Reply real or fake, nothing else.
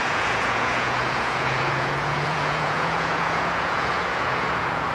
fake